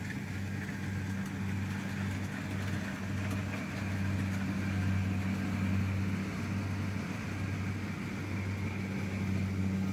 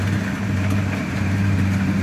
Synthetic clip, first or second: second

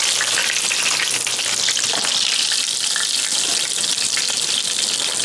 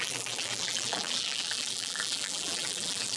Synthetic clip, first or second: second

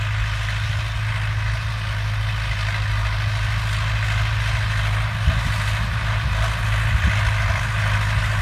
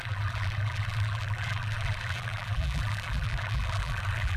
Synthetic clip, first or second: second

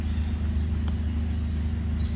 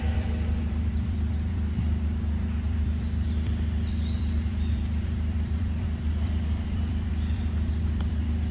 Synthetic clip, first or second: second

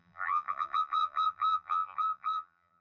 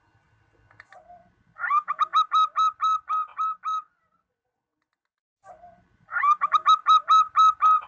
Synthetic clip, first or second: first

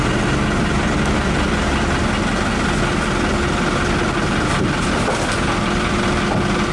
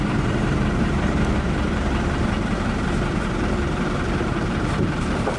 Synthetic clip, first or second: second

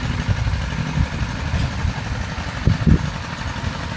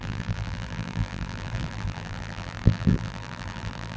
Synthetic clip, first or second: second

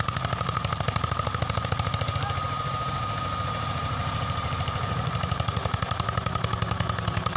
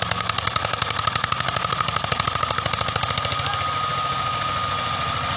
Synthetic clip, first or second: first